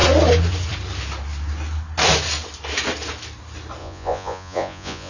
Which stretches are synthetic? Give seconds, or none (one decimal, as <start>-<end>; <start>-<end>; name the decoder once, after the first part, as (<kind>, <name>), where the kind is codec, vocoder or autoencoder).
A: 3.8-5.1 (vocoder, Vocos)